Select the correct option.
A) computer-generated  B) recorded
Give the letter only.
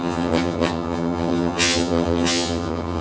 A